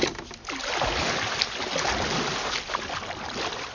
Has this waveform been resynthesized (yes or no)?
no